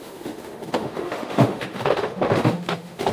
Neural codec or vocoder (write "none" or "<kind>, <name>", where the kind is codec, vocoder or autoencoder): autoencoder, DAC-VAE